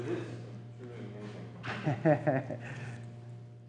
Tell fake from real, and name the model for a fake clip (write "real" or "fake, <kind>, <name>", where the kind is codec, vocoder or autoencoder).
real